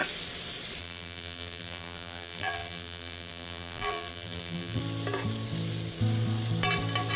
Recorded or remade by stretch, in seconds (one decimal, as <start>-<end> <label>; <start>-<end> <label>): 0.0-0.8 recorded; 0.8-4.8 remade; 4.8-7.2 recorded